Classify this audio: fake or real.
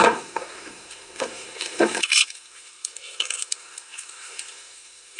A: fake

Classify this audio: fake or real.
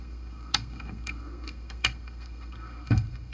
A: fake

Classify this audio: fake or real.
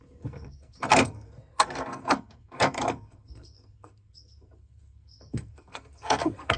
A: fake